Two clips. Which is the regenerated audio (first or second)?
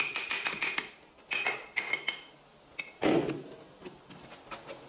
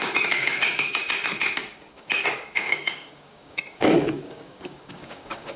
second